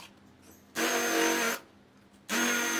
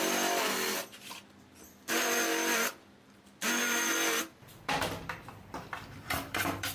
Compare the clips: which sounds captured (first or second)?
first